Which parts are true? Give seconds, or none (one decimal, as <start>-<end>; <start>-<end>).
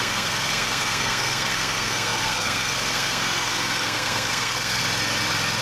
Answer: 4.8-5.6